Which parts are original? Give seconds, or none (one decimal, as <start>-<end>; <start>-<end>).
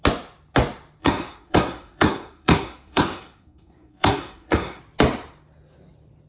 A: 0.0-1.0; 4.8-6.3